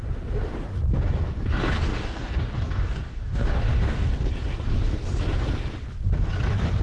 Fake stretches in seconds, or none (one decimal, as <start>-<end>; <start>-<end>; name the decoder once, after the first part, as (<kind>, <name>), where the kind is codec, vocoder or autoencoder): 1.9-4.3 (codec, DAC)